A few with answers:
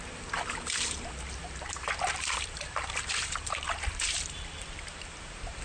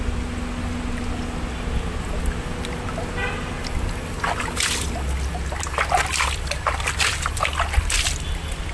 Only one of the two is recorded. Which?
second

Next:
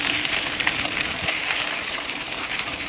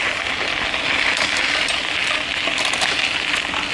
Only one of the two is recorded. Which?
second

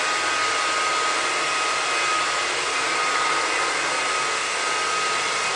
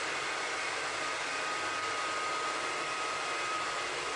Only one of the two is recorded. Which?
first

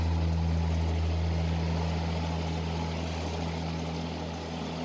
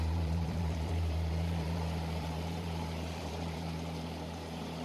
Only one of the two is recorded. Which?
first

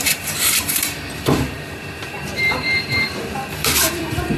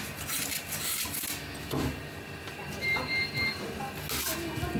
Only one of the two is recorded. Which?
second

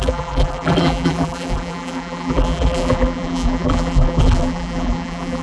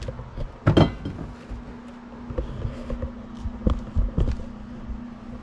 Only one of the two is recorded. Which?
second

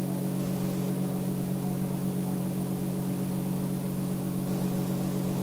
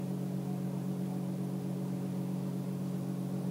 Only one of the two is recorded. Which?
first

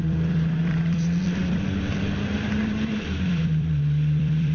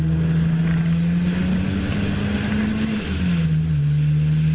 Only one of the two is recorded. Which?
second